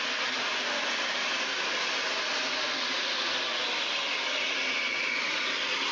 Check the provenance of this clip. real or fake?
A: real